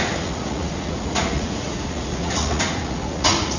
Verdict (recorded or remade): remade